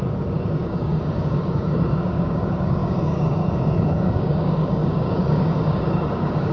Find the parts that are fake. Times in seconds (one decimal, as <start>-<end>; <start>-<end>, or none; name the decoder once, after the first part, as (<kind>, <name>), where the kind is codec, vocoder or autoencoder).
0.0-6.5 (codec, DAC)